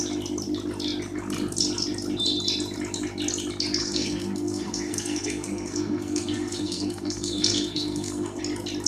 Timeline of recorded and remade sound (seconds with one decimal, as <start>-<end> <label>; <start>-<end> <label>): 0.0-3.8 recorded; 3.8-8.4 remade; 8.4-8.9 recorded